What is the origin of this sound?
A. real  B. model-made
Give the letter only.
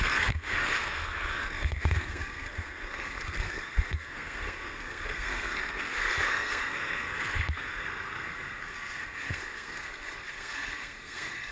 B